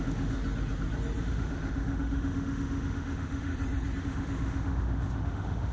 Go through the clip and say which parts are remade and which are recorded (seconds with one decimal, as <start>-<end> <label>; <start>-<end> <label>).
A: 0.0-0.4 remade; 0.4-1.2 recorded; 1.2-3.5 remade; 3.5-4.0 recorded; 4.0-5.7 remade